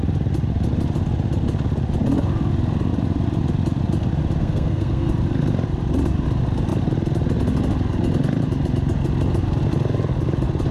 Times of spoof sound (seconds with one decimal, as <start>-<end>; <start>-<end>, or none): 4.4-5.1